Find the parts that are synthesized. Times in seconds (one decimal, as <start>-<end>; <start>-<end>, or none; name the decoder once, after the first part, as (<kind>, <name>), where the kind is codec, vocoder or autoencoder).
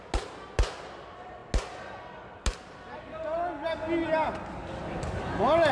none